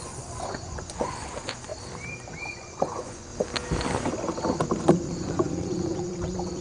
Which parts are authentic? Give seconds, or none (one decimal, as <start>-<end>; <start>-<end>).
1.7-2.4; 3.3-4.9

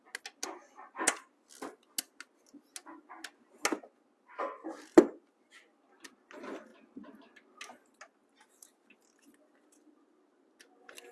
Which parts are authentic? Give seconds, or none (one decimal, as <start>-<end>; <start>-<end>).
0.0-11.1

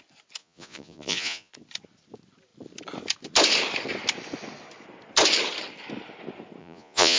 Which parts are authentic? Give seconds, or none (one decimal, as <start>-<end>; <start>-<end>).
0.0-0.4; 1.5-6.6